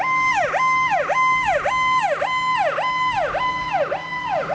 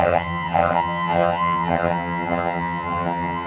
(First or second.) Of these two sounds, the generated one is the second